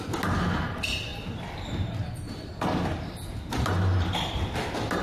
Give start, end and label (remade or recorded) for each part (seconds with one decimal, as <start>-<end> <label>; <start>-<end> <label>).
0.0-1.1 recorded; 1.1-4.1 remade; 4.1-5.0 recorded